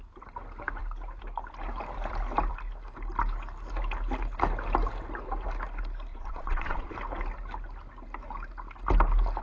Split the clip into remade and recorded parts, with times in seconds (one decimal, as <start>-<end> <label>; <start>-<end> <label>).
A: 0.0-6.1 recorded; 6.1-6.9 remade; 6.9-9.4 recorded